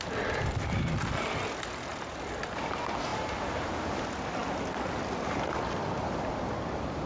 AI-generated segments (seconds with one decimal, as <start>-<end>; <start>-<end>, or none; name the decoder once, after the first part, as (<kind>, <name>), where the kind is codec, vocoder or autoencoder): 1.9-2.4 (vocoder, BigVGAN v2); 3.1-3.7